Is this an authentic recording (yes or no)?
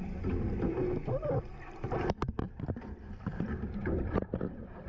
yes